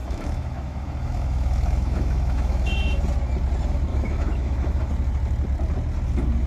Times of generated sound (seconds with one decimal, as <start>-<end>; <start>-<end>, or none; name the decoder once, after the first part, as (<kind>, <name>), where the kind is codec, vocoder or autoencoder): 0.0-3.0 (autoencoder, DAC-VAE); 3.9-4.9